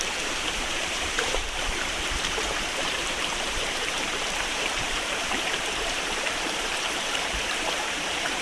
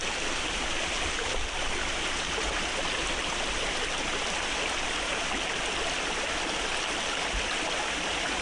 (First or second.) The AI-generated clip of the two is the first